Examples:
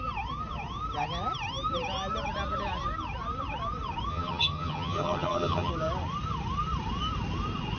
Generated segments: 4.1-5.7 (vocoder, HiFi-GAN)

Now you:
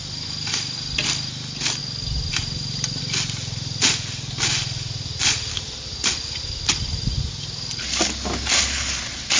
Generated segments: none